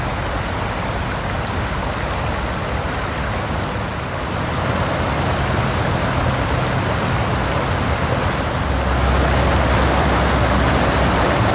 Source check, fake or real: real